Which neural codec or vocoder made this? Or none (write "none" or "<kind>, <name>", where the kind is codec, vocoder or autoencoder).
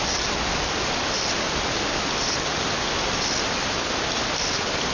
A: none